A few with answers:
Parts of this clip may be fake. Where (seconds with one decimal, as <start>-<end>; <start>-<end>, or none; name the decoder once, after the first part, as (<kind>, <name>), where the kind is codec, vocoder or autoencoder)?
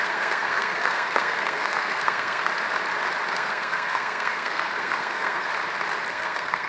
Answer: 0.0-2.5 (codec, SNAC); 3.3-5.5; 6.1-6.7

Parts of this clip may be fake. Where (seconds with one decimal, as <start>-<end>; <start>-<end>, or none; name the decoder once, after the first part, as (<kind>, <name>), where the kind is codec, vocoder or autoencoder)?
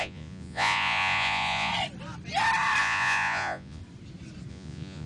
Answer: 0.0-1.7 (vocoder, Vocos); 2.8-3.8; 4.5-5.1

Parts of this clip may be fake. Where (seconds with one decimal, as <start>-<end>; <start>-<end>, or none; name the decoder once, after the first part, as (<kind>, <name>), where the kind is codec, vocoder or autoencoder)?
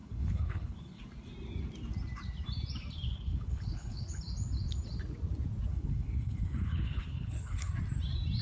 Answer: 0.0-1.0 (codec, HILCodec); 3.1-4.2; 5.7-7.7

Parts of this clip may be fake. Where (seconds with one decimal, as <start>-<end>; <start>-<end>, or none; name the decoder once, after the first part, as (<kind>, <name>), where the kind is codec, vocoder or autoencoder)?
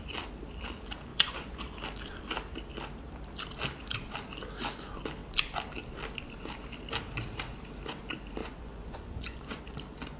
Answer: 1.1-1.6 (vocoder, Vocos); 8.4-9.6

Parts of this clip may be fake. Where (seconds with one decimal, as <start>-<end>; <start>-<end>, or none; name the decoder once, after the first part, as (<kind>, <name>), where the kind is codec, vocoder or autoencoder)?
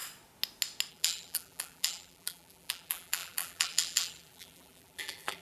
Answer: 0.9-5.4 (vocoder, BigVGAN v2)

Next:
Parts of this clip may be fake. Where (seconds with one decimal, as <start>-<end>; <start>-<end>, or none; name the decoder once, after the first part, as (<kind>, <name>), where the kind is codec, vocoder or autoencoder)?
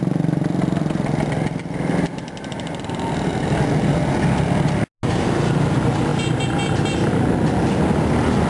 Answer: none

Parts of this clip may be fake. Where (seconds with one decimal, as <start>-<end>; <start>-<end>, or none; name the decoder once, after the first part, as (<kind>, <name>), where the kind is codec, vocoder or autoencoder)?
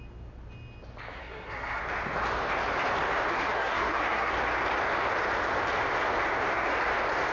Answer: 1.2-1.8 (codec, SNAC); 3.3-4.3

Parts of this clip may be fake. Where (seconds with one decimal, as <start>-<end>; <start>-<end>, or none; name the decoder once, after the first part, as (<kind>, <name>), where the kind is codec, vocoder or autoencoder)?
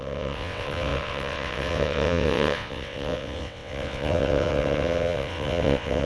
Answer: 0.0-6.1 (vocoder, WaveNeXt)